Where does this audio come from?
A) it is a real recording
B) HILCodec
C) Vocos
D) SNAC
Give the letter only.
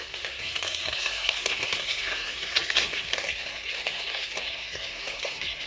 D